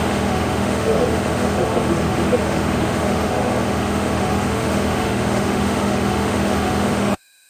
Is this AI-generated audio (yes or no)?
yes